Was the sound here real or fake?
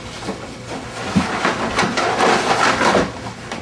real